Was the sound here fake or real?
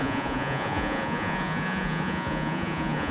fake